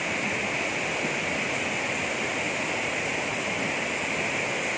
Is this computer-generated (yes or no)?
no